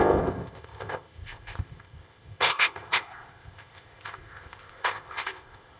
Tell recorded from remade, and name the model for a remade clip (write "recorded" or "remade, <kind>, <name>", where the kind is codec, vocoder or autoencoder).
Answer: remade, codec, ZipCodec